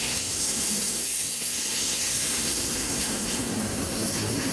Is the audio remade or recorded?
remade